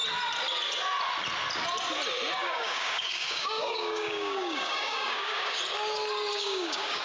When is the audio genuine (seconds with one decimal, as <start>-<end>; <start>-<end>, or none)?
0.0-2.4; 5.6-6.3